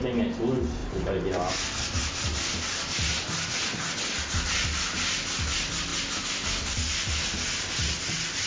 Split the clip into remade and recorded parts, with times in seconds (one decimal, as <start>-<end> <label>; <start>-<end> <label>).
0.0-8.5 recorded